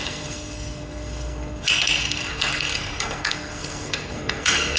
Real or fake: fake